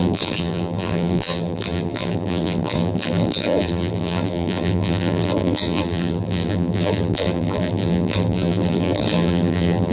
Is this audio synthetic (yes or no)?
yes